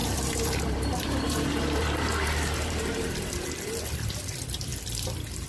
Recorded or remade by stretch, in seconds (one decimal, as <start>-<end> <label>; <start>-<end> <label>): 0.0-3.3 remade; 3.3-5.5 recorded